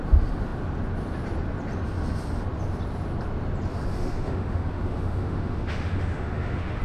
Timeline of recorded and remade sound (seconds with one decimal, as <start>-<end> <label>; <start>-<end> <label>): 0.0-3.9 recorded; 3.9-6.8 remade